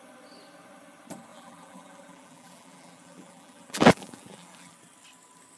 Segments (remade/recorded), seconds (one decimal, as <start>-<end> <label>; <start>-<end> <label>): 0.0-1.3 recorded; 1.3-4.7 remade; 4.7-5.6 recorded